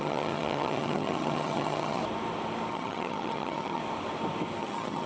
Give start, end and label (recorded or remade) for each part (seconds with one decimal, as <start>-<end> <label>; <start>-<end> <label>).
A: 0.0-2.0 remade; 2.0-2.7 recorded; 2.7-3.8 remade; 3.8-4.6 recorded; 4.6-5.1 remade